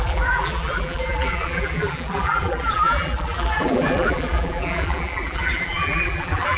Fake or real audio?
fake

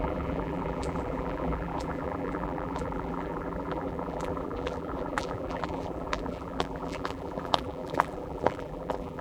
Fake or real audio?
fake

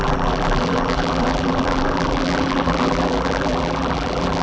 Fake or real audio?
fake